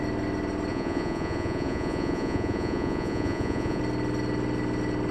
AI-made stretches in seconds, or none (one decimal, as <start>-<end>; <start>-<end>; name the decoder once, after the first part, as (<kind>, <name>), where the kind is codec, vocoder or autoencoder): 0.7-3.8 (vocoder, Vocos)